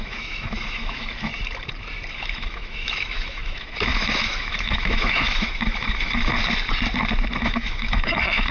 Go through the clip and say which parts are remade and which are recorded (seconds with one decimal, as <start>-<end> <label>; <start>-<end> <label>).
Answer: 0.0-1.3 remade; 1.3-2.1 recorded; 2.1-6.4 remade; 6.4-7.4 recorded; 7.4-8.5 remade

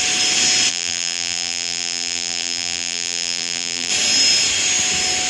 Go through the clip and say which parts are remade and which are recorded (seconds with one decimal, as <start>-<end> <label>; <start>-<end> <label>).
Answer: 0.0-0.7 recorded; 0.7-3.9 remade; 3.9-5.3 recorded

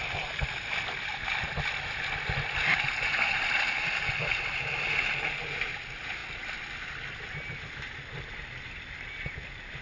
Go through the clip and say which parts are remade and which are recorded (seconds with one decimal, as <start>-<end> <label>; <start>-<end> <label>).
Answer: 0.0-9.8 recorded

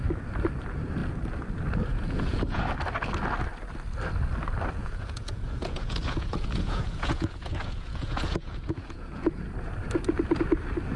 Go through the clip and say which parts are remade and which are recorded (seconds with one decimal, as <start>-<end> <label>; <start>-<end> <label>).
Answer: 0.0-1.9 recorded; 1.9-2.6 remade; 2.6-4.8 recorded; 4.8-9.4 remade; 9.4-11.0 recorded

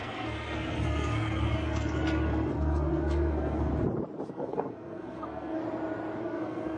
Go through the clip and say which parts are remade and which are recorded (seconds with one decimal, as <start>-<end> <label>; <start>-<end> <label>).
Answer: 0.0-3.7 remade; 3.7-4.3 recorded; 4.3-5.6 remade; 5.6-6.2 recorded; 6.2-6.8 remade